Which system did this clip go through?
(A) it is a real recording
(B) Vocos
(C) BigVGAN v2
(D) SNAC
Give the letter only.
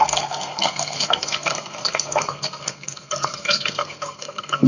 D